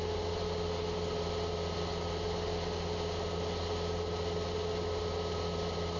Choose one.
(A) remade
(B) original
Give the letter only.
B